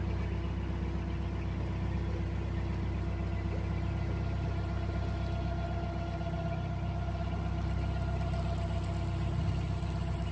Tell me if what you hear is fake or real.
real